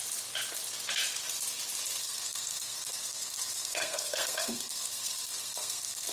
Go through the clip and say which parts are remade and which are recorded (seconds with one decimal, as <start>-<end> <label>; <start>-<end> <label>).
0.0-2.0 recorded; 2.0-6.1 remade